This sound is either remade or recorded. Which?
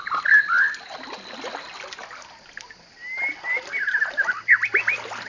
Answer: recorded